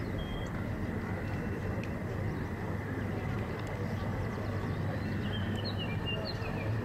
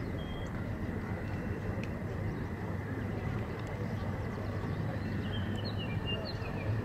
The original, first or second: first